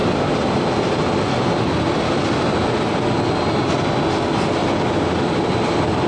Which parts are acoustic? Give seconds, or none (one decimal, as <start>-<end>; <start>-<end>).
1.7-4.6